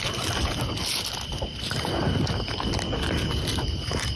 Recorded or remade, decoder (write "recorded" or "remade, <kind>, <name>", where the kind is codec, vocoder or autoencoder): recorded